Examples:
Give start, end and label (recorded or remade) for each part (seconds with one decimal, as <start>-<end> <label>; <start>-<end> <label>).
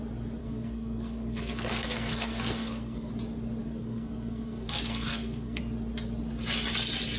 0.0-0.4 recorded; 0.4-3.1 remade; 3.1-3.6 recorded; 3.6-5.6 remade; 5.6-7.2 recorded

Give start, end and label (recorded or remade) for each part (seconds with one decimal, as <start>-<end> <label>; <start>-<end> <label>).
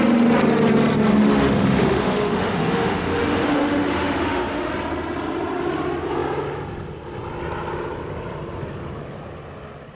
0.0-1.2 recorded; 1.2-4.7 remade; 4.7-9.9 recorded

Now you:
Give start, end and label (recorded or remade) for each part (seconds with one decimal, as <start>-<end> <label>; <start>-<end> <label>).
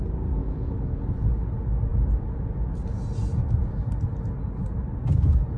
0.0-0.4 recorded; 0.4-1.0 remade; 1.0-5.6 recorded